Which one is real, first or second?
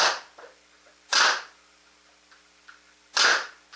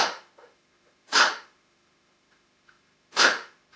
first